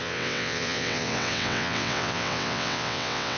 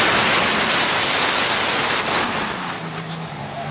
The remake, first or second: first